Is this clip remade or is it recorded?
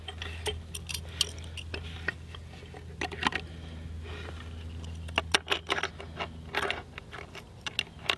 recorded